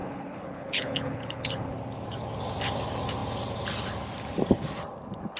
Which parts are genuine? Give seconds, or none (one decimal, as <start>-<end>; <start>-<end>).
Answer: 1.7-5.4